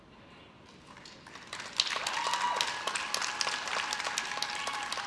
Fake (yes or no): no